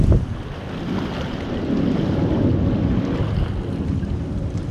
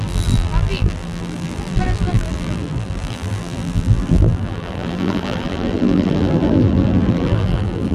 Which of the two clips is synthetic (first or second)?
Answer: second